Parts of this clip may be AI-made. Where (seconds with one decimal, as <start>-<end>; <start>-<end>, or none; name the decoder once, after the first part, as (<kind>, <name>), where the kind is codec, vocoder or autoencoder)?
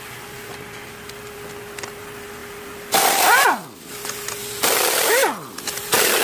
none